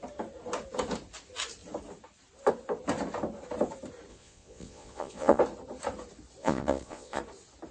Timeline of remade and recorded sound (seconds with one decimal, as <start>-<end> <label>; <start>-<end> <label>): 0.0-4.1 recorded; 4.1-5.4 remade; 5.4-6.4 recorded; 6.4-7.2 remade; 7.2-7.7 recorded

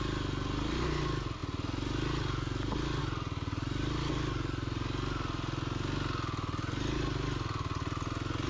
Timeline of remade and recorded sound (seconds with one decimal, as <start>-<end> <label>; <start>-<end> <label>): 0.0-8.5 recorded

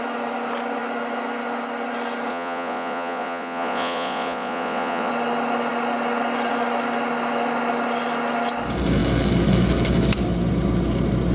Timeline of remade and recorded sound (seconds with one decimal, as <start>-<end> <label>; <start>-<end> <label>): 0.0-2.3 recorded; 2.3-5.1 remade; 5.1-11.3 recorded

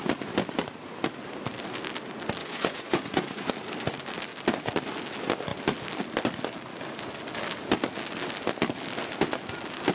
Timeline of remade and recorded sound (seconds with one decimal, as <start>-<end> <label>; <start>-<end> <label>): 0.0-2.4 recorded; 2.4-3.5 remade; 3.5-9.9 recorded

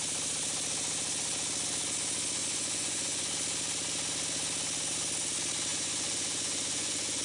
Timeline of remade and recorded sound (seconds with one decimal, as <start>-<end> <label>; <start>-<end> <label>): 0.0-2.4 recorded; 2.4-3.3 remade; 3.3-5.7 recorded; 5.7-7.2 remade

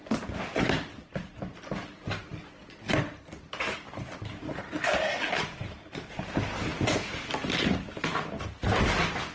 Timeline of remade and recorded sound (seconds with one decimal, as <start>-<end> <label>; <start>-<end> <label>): 0.0-6.7 recorded; 6.7-7.3 remade; 7.3-9.3 recorded

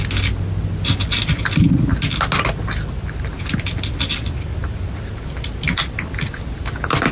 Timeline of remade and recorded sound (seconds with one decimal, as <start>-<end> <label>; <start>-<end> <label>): 0.0-7.1 recorded